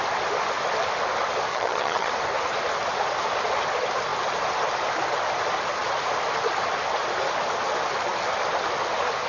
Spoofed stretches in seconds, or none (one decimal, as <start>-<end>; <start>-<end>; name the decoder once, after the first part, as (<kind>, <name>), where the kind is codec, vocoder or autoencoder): 1.5-2.1 (vocoder, HiFi-GAN)